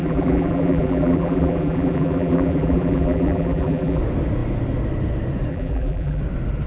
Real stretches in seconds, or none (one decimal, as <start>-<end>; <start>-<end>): 4.0-5.5; 6.2-6.7